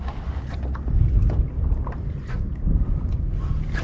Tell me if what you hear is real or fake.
real